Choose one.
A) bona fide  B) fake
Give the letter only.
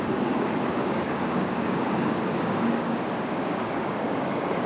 B